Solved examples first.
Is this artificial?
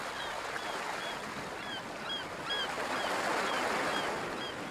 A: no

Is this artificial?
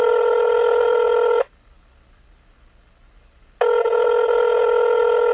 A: no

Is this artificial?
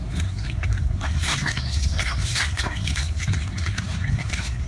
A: yes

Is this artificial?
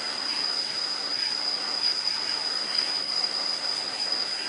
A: yes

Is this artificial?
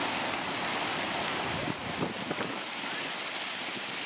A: no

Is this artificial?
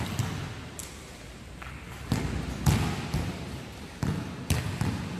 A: no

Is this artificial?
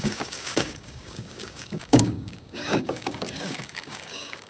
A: yes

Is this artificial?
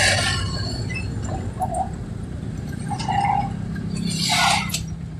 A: yes